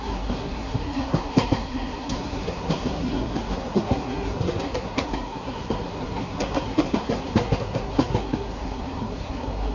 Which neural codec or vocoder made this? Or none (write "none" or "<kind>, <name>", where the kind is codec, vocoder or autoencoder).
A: codec, SNAC